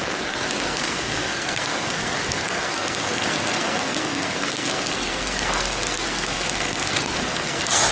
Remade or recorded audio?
remade